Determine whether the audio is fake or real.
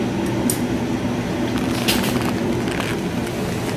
real